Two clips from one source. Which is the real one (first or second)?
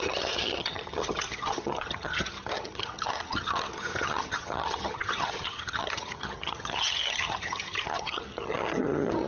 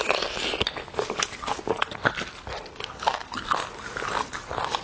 second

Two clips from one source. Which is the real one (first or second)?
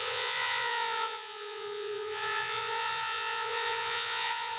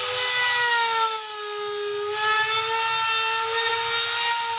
second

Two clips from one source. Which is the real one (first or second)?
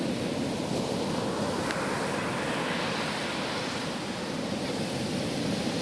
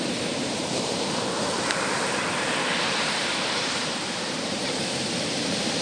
first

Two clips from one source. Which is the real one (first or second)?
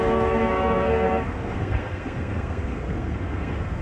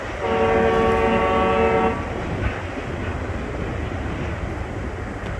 second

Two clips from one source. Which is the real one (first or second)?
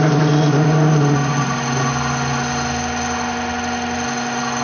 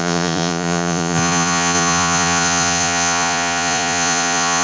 first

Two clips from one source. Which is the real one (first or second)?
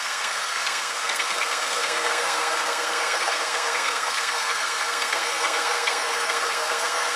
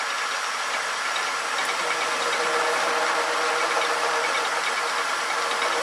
second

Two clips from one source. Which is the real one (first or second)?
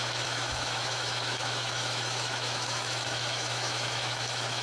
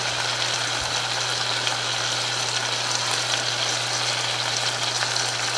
second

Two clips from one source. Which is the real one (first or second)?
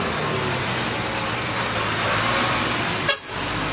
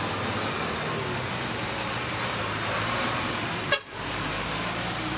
first